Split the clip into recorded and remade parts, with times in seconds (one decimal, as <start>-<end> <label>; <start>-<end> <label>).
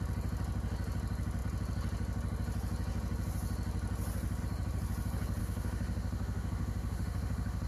0.0-5.4 recorded; 5.4-7.7 remade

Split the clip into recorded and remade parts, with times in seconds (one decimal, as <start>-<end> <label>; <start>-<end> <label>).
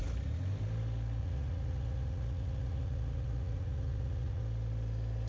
0.0-1.2 recorded; 1.2-4.4 remade; 4.4-5.3 recorded